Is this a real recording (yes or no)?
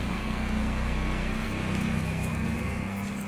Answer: no